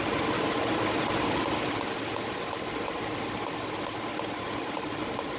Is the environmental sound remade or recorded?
recorded